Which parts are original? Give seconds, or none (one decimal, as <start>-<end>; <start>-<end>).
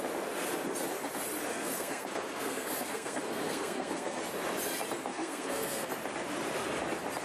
0.0-1.5; 4.2-5.1; 5.9-7.2